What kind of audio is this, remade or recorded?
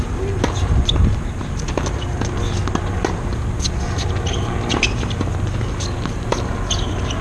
recorded